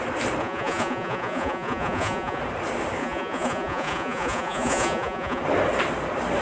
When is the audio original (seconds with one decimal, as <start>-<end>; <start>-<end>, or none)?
0.0-0.4; 2.4-3.0; 5.4-6.4